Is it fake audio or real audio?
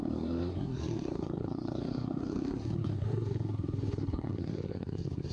fake